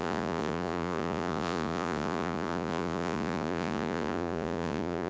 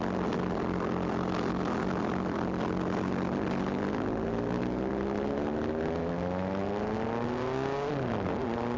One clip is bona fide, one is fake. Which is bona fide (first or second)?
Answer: second